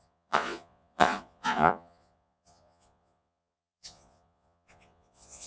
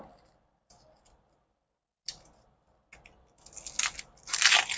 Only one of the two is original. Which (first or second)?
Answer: second